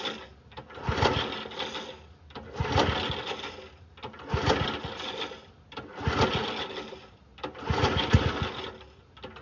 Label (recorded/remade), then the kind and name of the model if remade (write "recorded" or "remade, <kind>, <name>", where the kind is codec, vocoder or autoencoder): recorded